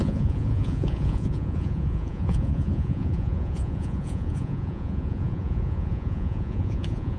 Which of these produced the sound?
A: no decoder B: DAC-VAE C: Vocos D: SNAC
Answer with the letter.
C